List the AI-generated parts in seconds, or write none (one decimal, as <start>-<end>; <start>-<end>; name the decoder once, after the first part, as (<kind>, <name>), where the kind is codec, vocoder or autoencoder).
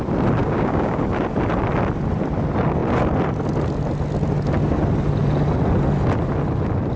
0.4-1.0 (codec, DAC)